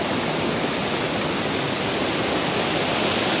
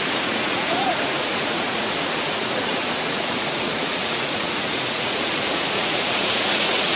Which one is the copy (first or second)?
second